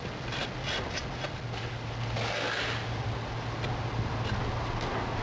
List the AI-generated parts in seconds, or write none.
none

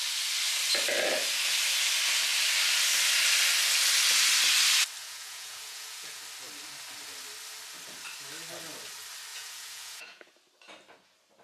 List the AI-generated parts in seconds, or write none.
5.0-6.2 (vocoder, Vocos); 9.3-10.3

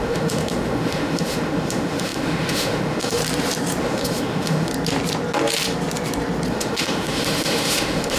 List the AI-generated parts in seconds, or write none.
0.0-3.2 (autoencoder, DAC-VAE); 3.8-4.7; 6.5-8.2

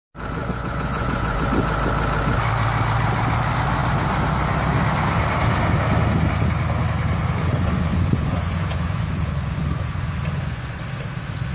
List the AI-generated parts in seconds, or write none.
0.4-1.4 (vocoder, Vocos); 7.2-10.8